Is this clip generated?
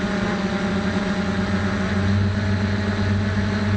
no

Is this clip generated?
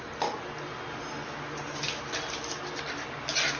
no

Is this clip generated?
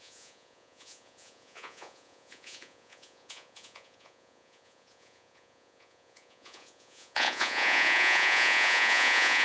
yes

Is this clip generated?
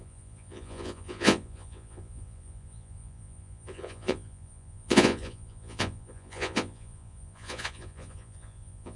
yes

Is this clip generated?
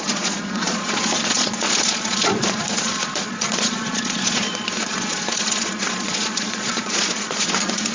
yes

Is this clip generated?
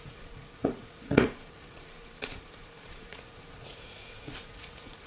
yes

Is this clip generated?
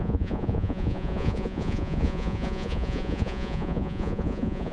yes